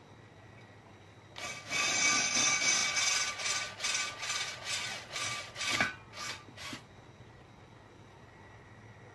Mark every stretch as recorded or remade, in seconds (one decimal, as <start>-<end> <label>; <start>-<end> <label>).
0.0-9.1 recorded